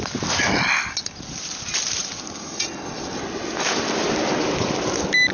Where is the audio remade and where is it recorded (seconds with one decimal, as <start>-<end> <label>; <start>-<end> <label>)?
0.0-5.3 recorded